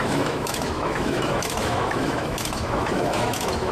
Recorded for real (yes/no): no